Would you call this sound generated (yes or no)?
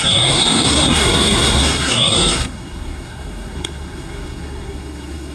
yes